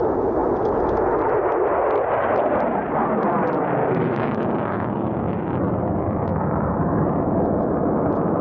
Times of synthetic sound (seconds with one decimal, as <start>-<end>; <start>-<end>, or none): 3.8-5.6; 6.3-6.8

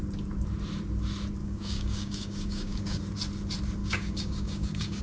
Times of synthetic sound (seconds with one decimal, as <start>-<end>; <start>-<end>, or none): 1.4-3.0; 3.8-5.0